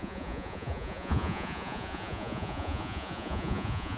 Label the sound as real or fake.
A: fake